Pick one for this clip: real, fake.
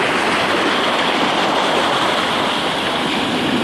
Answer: real